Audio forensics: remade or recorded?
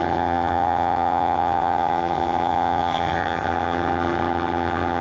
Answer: remade